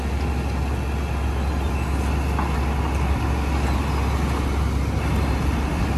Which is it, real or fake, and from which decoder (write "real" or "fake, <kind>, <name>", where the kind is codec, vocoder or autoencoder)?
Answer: real